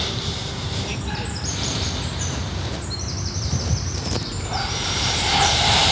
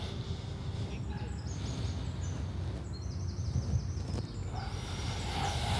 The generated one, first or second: first